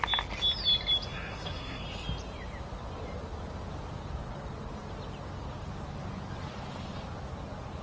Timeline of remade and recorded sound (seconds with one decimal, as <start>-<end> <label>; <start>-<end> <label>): 0.0-1.1 recorded; 1.1-1.8 remade; 1.8-7.8 recorded